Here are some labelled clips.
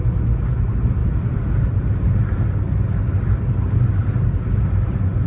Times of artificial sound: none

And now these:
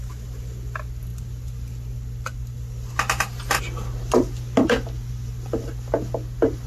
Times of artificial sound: none

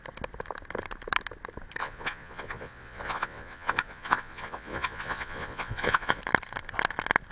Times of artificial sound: 1.8-6.2 (vocoder, Vocos)

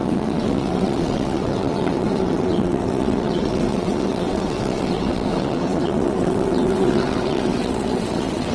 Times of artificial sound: 0.0-8.5 (vocoder, WaveNeXt)

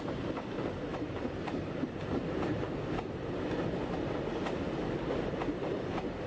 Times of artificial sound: 0.9-2.6 (vocoder, BigVGAN v2)

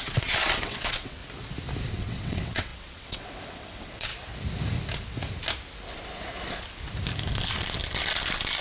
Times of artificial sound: 0.0-1.2 (vocoder, WaveNeXt); 1.9-4.1

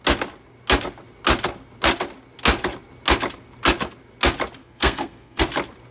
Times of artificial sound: 4.6-5.4 (codec, SNAC)